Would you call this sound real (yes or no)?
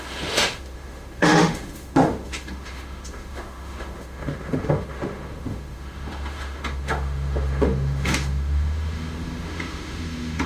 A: no